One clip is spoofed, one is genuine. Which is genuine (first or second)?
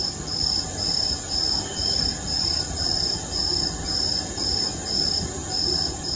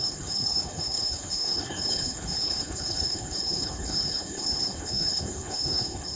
first